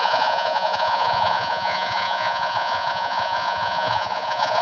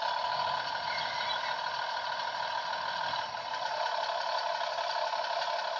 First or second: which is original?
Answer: second